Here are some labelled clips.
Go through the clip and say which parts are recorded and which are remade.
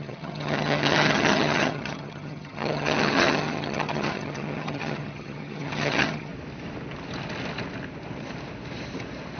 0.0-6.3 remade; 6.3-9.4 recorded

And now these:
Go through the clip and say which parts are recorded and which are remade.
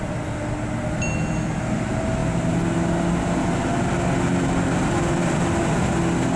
0.0-6.4 recorded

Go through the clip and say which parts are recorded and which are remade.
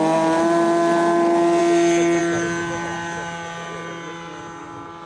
0.0-5.1 recorded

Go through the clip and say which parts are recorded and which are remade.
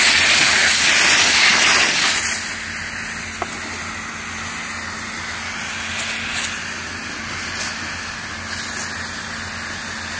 0.0-10.2 recorded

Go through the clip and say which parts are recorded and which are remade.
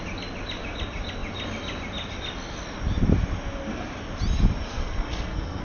0.0-4.7 recorded; 4.7-5.6 remade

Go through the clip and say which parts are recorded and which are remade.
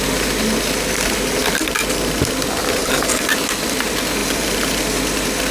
0.0-1.4 recorded; 1.4-2.2 remade; 2.2-2.8 recorded; 2.8-3.4 remade; 3.4-4.2 recorded; 4.2-4.8 remade; 4.8-5.5 recorded